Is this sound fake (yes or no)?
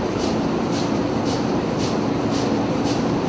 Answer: yes